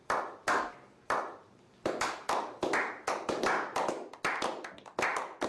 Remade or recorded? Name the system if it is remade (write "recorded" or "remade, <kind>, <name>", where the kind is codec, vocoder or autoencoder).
recorded